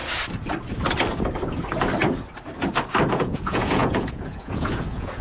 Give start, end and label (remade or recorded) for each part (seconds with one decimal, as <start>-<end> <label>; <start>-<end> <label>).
0.0-3.1 recorded; 3.1-5.2 remade

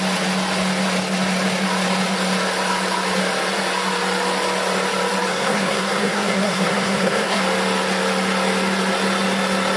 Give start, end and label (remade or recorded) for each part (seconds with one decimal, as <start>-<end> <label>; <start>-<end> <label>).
0.0-5.3 recorded; 5.3-7.4 remade; 7.4-9.8 recorded

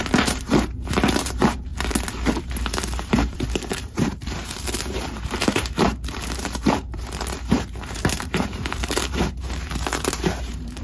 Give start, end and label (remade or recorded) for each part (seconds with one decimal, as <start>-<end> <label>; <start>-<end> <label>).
0.0-1.7 remade; 1.7-2.4 recorded; 2.4-10.8 remade